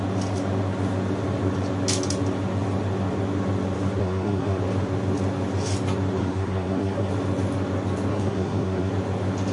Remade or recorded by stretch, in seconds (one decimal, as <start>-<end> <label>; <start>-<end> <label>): 0.0-4.0 recorded; 4.0-4.6 remade; 4.6-6.2 recorded; 6.2-7.1 remade; 7.1-8.1 recorded; 8.1-8.9 remade; 8.9-9.5 recorded